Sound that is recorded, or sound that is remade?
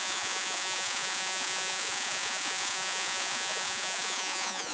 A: remade